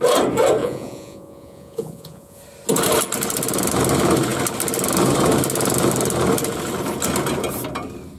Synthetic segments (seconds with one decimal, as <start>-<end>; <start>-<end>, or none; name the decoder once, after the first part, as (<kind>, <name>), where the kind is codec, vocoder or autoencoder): 0.6-2.4 (vocoder, Vocos)